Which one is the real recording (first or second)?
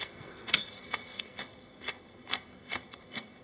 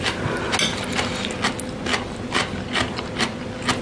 second